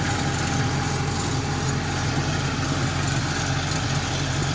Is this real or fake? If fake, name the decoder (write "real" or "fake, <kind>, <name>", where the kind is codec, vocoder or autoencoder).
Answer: real